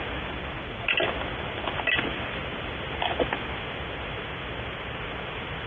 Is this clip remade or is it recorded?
recorded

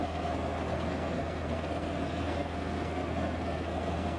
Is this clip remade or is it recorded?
remade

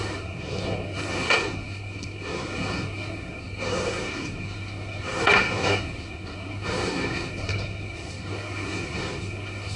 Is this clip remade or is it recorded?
remade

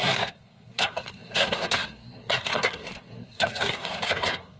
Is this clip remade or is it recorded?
remade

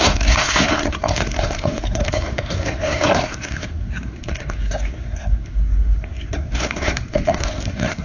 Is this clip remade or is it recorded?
remade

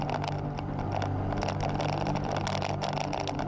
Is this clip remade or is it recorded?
recorded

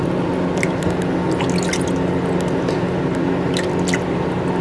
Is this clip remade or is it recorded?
recorded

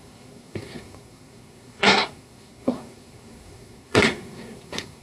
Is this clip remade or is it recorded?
remade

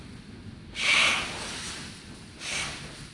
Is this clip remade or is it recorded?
recorded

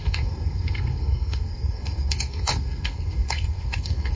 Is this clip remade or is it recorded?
remade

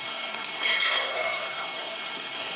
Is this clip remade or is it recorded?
remade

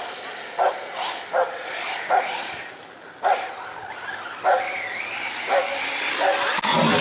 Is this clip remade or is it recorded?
recorded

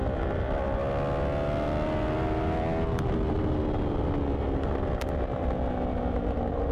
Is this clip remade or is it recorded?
recorded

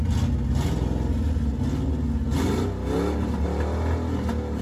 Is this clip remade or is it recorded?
recorded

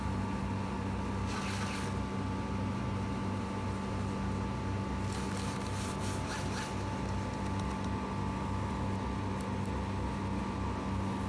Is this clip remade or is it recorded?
recorded